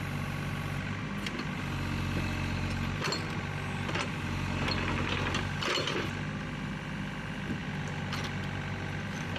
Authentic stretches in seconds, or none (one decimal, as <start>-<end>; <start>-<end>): 0.0-9.4